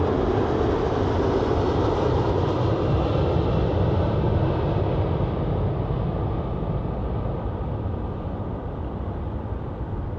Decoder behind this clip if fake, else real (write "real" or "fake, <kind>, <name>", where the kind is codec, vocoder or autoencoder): real